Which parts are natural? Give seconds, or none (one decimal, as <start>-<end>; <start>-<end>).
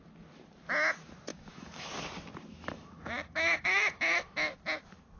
0.0-1.3; 1.9-2.5; 4.6-5.2